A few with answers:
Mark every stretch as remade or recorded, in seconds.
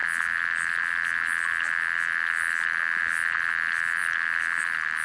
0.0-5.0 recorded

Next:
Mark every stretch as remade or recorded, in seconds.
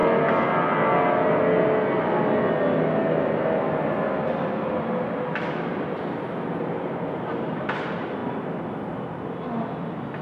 0.0-10.2 recorded